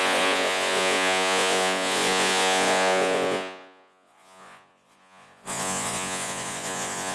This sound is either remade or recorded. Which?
remade